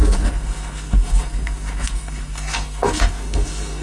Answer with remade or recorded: remade